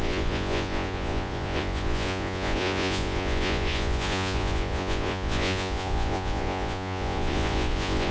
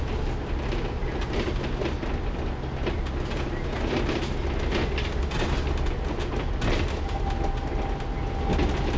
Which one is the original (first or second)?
second